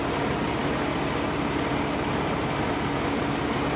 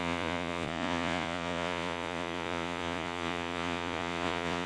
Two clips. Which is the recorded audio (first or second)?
first